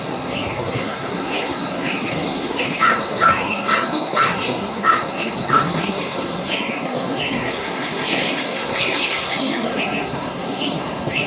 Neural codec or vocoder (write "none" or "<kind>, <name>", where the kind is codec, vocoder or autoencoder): codec, SNAC